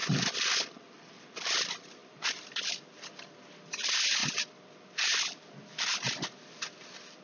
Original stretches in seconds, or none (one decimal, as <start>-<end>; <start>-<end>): none